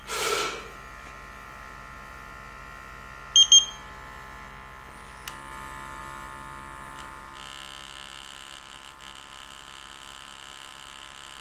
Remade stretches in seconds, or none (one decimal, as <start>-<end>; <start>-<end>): none